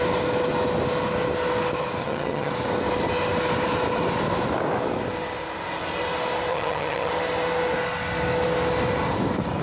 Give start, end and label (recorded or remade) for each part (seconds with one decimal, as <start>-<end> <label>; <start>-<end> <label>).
0.0-2.0 recorded; 2.0-2.5 remade; 2.5-6.5 recorded; 6.5-7.1 remade; 7.1-9.6 recorded